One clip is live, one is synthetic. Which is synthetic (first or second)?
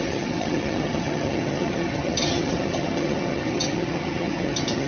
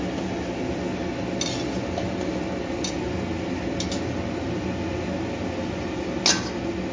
first